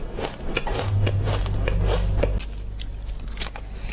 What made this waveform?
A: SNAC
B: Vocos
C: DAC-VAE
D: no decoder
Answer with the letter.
D